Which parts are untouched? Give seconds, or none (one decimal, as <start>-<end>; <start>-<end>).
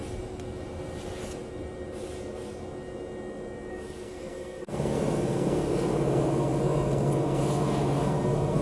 0.0-3.7